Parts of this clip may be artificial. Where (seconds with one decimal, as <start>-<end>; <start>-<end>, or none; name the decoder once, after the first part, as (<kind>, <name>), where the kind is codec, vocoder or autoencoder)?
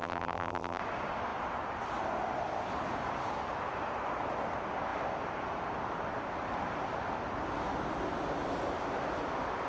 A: 0.0-0.8 (vocoder, BigVGAN v2)